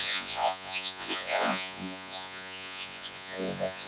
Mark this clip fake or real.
fake